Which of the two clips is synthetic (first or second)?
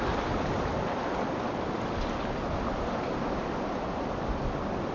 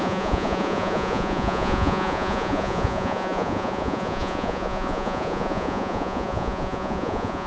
second